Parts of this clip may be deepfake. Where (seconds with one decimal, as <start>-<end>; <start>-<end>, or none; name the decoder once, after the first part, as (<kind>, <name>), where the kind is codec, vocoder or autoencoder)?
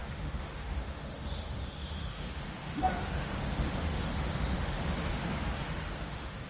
0.0-6.5 (autoencoder, DAC-VAE)